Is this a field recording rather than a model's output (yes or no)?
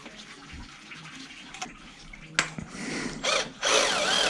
yes